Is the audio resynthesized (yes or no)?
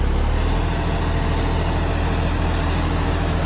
no